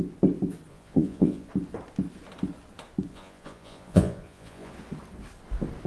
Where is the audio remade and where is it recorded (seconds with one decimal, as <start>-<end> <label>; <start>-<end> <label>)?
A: 0.0-0.7 recorded; 0.7-1.5 remade; 1.5-3.1 recorded; 3.1-4.7 remade; 4.7-5.9 recorded